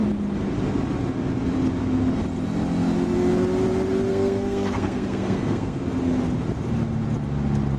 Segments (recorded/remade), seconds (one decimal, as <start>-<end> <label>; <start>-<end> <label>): 0.0-4.1 recorded; 4.1-5.8 remade; 5.8-7.8 recorded